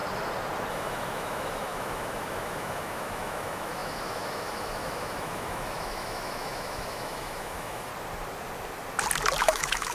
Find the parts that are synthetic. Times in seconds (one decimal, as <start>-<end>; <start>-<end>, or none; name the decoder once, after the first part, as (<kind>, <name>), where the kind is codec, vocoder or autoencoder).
0.7-7.9 (autoencoder, DAC-VAE); 9.4-9.9